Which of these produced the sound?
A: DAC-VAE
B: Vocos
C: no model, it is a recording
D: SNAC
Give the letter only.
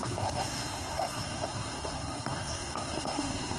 D